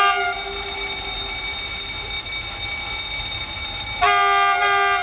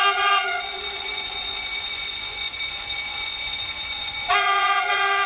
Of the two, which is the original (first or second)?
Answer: first